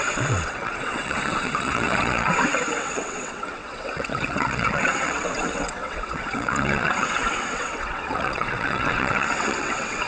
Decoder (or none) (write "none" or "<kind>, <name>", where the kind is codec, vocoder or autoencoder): vocoder, WaveNeXt